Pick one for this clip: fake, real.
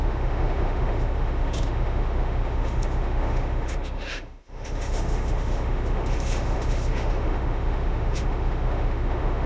fake